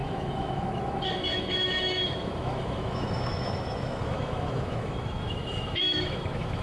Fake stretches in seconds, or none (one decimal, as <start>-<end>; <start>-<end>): 0.0-6.6